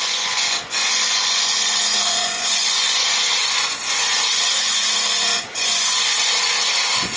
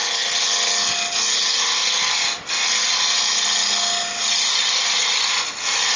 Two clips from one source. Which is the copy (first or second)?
first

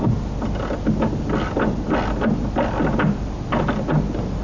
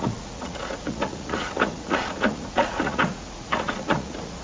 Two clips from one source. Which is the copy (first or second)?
second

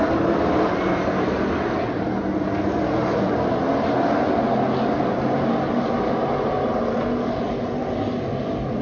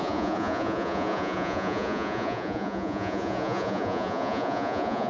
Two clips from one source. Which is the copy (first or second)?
second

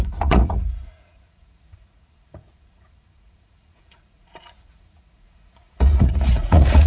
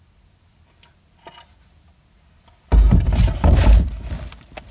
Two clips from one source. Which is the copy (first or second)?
first